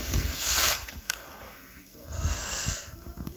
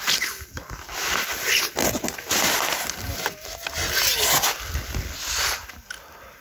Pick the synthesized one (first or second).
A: first